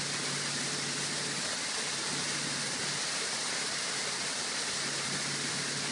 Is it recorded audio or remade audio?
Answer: recorded